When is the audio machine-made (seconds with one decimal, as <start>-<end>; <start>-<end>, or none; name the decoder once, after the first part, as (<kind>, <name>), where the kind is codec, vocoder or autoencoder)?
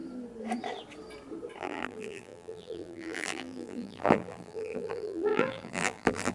1.6-6.3 (vocoder, BigVGAN v2)